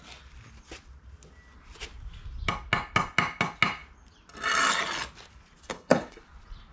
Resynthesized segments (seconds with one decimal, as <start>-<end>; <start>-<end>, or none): 5.7-6.2